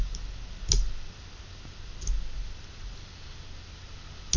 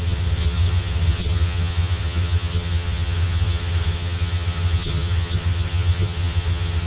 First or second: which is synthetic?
second